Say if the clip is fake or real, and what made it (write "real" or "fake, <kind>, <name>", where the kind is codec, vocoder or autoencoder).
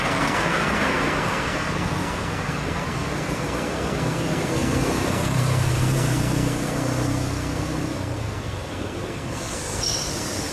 fake, codec, SNAC